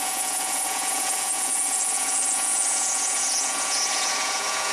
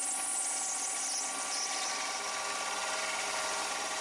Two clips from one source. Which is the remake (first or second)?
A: first